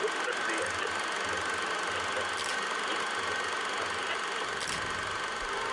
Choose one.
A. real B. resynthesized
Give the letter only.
A